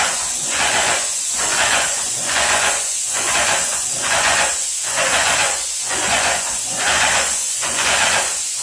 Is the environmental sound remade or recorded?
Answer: remade